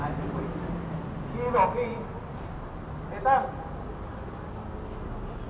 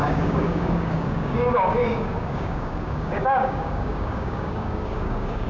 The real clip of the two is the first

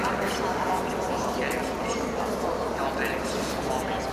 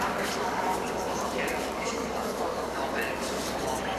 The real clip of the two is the first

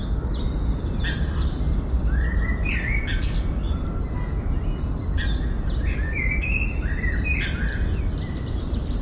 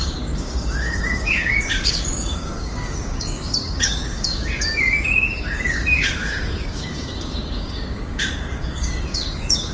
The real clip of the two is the first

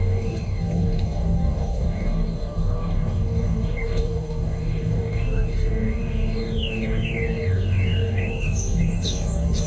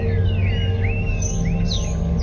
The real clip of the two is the second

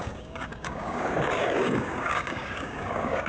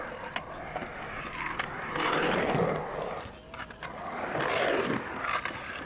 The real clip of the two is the second